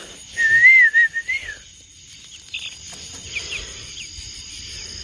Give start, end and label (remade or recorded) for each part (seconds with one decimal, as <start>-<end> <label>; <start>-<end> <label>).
0.0-5.0 recorded